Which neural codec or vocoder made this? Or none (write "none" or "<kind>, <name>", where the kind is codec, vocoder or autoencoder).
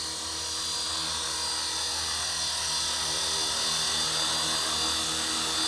none